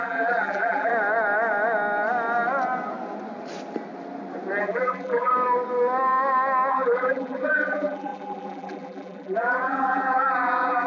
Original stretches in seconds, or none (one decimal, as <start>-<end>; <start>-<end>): 0.9-4.6; 5.3-6.7